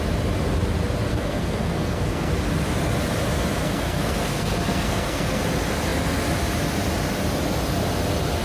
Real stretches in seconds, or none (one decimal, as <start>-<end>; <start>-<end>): 0.0-1.1; 2.3-3.6; 5.4-8.4